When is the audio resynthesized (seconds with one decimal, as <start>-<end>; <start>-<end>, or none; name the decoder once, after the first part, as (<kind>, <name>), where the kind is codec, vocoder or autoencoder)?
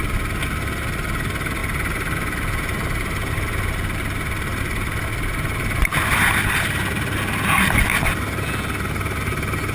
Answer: none